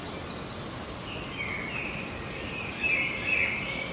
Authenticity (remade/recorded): recorded